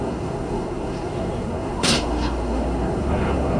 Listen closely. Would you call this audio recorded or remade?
remade